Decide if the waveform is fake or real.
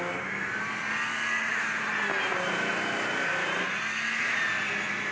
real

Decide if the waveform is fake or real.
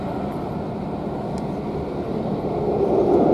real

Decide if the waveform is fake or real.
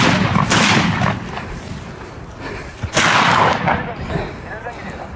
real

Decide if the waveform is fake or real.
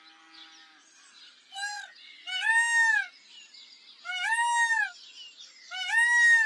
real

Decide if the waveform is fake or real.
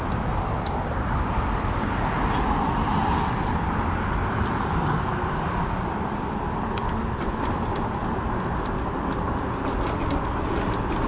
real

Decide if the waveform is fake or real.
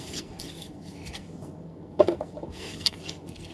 fake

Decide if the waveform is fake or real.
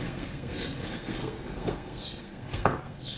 fake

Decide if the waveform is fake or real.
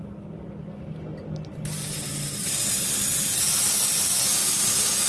real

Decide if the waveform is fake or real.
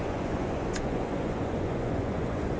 fake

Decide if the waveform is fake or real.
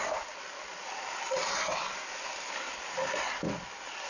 real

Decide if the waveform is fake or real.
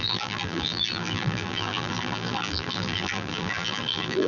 fake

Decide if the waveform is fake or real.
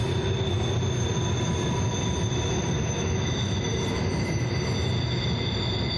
real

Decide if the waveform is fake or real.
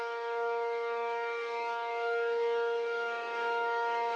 fake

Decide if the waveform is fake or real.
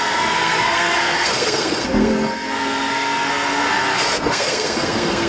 fake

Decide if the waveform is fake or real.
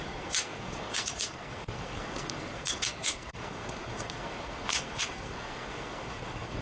fake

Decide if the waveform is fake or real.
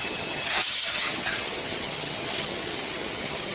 fake